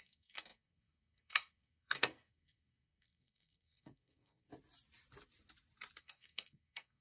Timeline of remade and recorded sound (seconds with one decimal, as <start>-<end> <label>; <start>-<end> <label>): 0.0-4.5 remade; 4.5-6.0 recorded; 6.0-7.0 remade